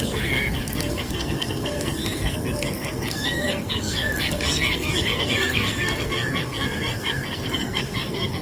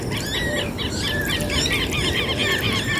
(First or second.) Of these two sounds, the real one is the second